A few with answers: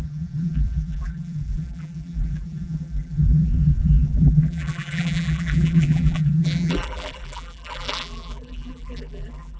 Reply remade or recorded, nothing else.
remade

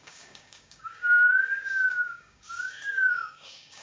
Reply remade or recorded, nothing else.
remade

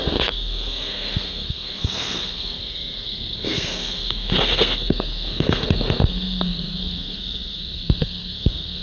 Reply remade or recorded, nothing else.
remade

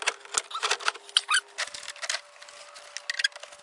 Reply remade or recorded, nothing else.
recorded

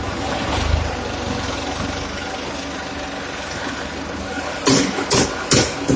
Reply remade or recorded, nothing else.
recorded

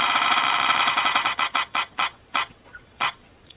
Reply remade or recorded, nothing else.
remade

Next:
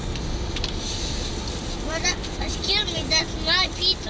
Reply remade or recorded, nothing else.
recorded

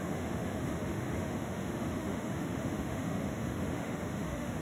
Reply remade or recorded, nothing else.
remade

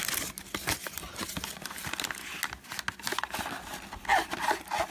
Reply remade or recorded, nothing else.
recorded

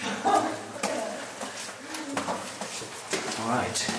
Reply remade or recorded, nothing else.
recorded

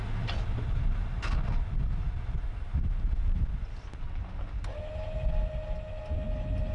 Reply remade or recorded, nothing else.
recorded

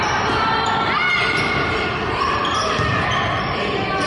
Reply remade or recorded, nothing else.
recorded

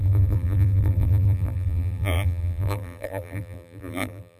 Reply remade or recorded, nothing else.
remade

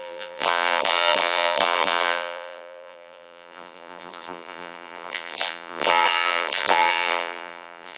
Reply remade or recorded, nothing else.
remade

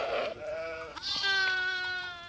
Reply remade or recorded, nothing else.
remade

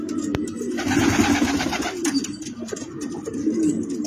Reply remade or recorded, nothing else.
recorded